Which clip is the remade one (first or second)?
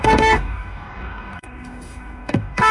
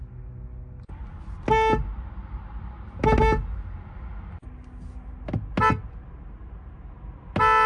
first